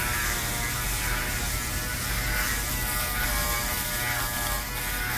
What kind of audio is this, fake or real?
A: real